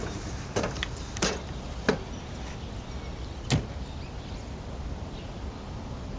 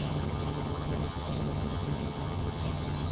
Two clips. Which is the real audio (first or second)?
first